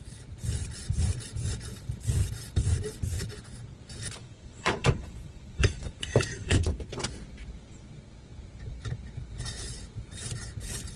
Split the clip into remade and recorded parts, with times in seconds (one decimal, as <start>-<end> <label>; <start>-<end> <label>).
0.0-4.2 recorded; 4.2-6.9 remade; 6.9-11.0 recorded

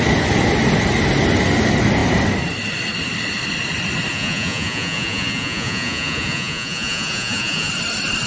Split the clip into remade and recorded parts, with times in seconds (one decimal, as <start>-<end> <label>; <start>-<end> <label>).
0.0-4.1 recorded; 4.1-7.7 remade; 7.7-8.3 recorded

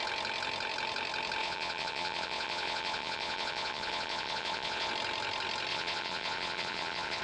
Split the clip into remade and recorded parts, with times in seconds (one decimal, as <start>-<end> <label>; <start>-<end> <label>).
0.0-1.4 recorded; 1.4-4.9 remade; 4.9-5.7 recorded; 5.7-7.2 remade

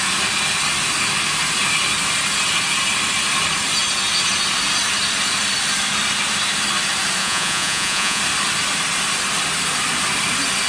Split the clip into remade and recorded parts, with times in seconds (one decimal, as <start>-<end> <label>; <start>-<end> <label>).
0.0-7.2 recorded; 7.2-8.2 remade; 8.2-10.7 recorded